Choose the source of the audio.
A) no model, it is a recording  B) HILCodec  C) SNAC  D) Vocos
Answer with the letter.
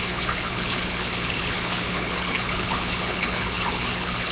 B